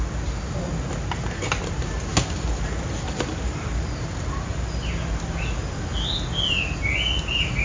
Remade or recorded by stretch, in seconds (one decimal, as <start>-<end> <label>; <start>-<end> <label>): 0.0-7.6 recorded